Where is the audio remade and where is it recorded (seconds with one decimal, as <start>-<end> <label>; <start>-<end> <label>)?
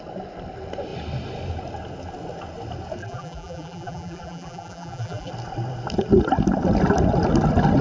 0.0-3.0 recorded; 3.0-5.3 remade; 5.3-7.8 recorded